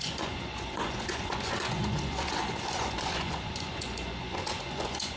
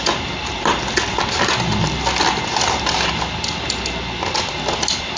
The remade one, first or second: first